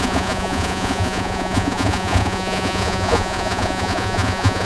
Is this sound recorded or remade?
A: remade